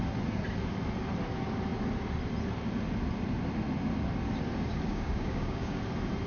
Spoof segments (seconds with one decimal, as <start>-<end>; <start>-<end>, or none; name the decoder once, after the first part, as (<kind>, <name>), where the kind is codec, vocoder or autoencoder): 4.9-5.8 (codec, DAC)

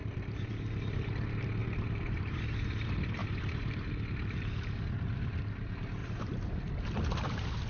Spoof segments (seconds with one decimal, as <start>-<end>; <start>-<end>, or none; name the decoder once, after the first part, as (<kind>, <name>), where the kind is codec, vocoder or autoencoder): 0.0-0.5 (vocoder, BigVGAN v2); 1.6-2.4; 3.2-3.9; 6.0-6.5

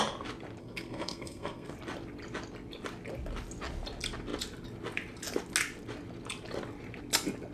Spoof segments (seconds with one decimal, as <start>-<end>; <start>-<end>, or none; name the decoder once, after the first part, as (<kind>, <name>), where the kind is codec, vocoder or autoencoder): 0.6-1.7 (codec, SNAC)

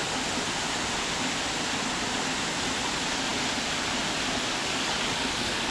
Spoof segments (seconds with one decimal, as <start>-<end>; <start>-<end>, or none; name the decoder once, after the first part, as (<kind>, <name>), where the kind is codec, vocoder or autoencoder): 4.6-5.7 (codec, DAC)